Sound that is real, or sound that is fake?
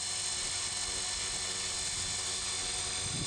real